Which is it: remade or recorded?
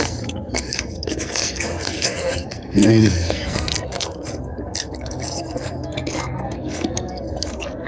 remade